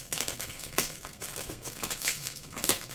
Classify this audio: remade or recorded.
remade